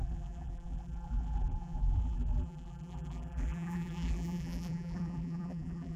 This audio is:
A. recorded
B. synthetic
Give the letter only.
B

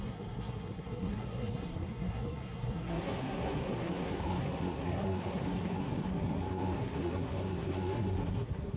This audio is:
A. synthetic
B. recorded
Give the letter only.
A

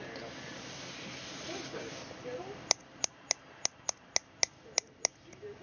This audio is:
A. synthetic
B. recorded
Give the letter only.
B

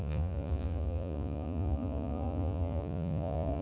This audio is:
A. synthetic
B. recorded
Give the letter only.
A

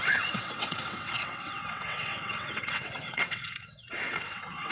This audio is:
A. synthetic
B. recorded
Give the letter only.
A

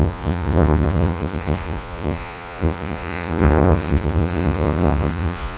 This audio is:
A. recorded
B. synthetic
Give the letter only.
B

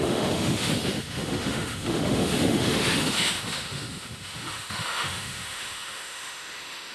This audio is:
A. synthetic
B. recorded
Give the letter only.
A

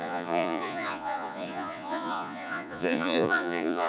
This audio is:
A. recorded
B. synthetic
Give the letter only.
B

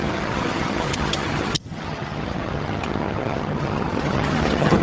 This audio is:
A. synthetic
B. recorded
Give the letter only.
A